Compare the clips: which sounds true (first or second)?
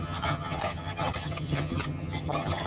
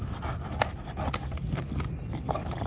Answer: second